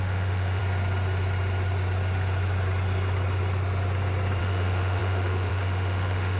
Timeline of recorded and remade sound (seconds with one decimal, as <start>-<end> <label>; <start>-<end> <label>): 0.0-0.6 remade; 0.6-4.4 recorded; 4.4-6.4 remade